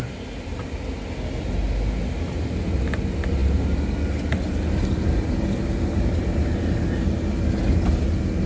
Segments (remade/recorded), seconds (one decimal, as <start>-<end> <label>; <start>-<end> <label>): 0.0-8.5 recorded